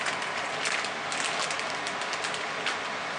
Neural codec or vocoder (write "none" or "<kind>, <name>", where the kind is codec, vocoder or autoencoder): none